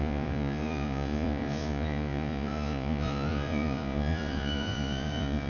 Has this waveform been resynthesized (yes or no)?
yes